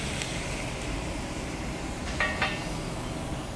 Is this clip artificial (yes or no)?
no